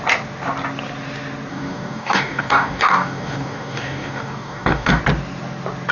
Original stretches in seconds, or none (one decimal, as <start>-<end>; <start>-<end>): 0.0-1.5; 5.0-5.9